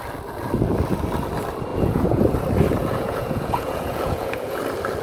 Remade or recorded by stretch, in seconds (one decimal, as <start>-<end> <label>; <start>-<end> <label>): 0.0-1.7 recorded; 1.7-2.2 remade; 2.2-2.8 recorded; 2.8-4.6 remade; 4.6-5.0 recorded